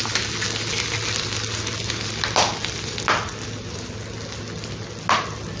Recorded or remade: recorded